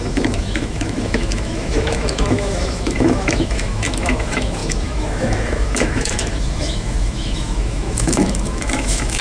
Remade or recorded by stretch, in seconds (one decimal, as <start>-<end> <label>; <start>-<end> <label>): 0.0-9.2 remade